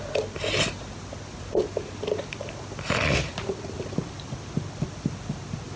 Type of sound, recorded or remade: recorded